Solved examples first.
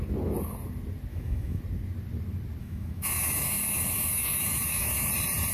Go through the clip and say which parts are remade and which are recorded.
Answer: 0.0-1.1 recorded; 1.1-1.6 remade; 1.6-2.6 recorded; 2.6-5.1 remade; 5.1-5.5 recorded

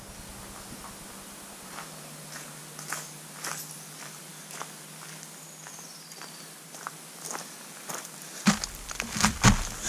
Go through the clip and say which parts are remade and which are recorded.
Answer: 0.0-9.9 recorded

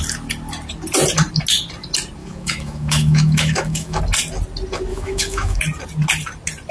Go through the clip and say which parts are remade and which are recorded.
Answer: 0.0-2.2 recorded; 2.2-4.0 remade; 4.0-4.9 recorded; 4.9-5.6 remade; 5.6-6.7 recorded